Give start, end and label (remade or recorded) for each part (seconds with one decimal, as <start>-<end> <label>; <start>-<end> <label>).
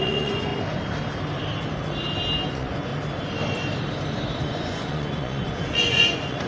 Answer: 0.0-0.5 remade; 0.5-2.5 recorded; 2.5-2.9 remade; 2.9-4.4 recorded; 4.4-6.5 remade